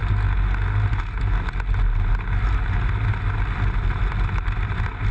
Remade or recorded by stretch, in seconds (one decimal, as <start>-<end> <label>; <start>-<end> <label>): 0.0-5.1 recorded